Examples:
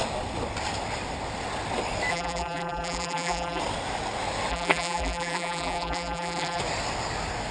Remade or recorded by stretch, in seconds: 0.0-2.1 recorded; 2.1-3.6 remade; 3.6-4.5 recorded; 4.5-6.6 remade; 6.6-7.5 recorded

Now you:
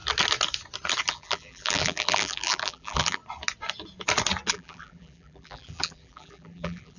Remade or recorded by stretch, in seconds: 0.0-1.1 recorded; 1.1-3.2 remade; 3.2-4.5 recorded; 4.5-7.0 remade

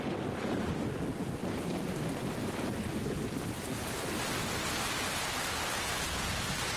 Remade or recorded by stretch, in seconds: 0.0-6.8 recorded

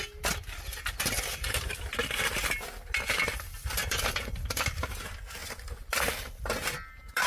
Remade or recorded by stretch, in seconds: 0.0-3.5 recorded; 3.5-4.6 remade; 4.6-5.4 recorded; 5.4-6.1 remade; 6.1-7.3 recorded